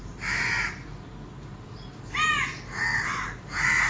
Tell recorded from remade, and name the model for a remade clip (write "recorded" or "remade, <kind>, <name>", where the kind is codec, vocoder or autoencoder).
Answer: recorded